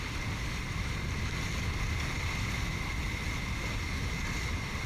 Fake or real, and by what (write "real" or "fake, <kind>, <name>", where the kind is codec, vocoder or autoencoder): real